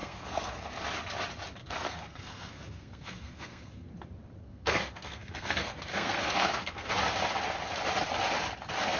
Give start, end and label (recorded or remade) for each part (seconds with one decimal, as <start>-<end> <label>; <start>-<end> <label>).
0.0-0.8 remade; 0.8-1.6 recorded; 1.6-3.9 remade; 3.9-4.4 recorded; 4.4-6.9 remade; 6.9-9.0 recorded